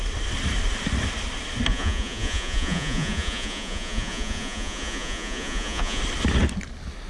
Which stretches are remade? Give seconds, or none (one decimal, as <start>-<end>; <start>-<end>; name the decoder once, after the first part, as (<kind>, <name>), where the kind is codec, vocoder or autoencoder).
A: 1.7-6.0 (vocoder, Vocos)

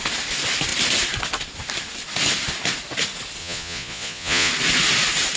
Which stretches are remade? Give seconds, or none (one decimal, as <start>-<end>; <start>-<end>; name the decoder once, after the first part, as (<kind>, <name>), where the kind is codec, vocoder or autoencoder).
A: 3.4-4.5 (vocoder, Vocos)